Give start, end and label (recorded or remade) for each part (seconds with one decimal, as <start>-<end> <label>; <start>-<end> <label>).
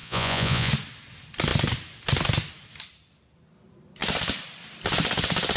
0.0-0.7 remade; 0.7-5.6 recorded